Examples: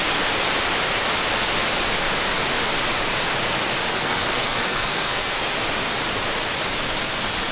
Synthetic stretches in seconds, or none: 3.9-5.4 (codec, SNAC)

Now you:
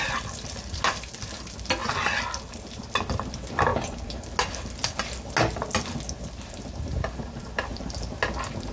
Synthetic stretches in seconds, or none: none

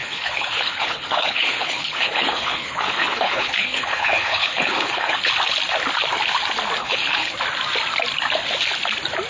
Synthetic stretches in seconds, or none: 0.0-5.3 (codec, HILCodec); 6.8-7.3

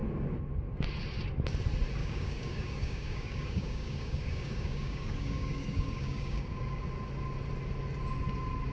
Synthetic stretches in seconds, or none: 2.0-6.8 (codec, DAC)

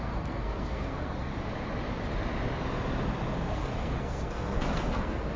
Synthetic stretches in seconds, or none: 0.0-1.3 (codec, SNAC); 3.5-5.4

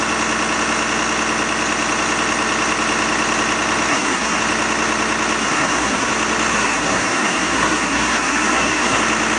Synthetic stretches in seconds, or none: 3.9-4.4 (codec, SNAC); 5.4-6.1; 6.5-9.0

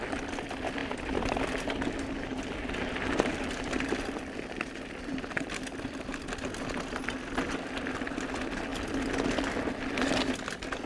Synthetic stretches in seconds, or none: none